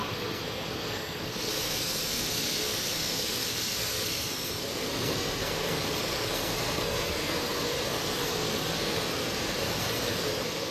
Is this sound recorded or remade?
remade